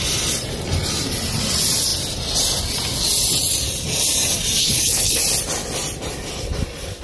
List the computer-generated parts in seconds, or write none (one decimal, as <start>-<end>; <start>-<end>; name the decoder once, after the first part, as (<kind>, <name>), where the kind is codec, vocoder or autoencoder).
4.6-5.2 (codec, HILCodec)